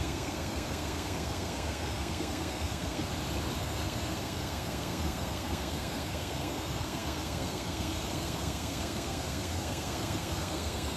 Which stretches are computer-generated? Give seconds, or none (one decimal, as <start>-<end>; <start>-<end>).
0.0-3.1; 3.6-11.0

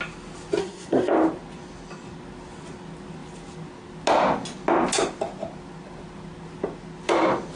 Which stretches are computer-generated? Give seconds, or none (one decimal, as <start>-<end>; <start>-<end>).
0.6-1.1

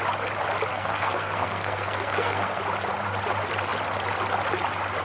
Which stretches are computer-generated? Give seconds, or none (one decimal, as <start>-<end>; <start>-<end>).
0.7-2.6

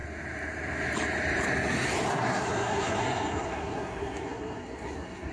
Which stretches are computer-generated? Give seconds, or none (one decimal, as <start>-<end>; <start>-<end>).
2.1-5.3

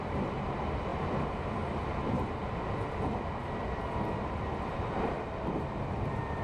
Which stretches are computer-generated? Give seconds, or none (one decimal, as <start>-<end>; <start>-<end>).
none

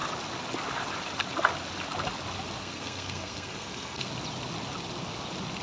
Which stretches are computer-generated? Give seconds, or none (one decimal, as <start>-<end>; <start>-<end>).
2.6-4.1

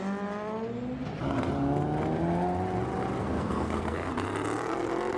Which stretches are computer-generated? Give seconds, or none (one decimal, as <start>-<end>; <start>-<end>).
3.2-4.1

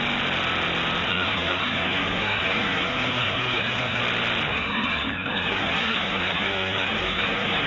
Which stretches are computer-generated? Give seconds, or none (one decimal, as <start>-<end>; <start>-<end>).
1.1-4.0; 4.5-7.7